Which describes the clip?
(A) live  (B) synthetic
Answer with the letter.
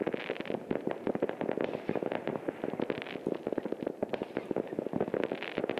A